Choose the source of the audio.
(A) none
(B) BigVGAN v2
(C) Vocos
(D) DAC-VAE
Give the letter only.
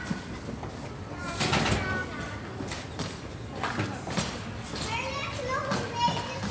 A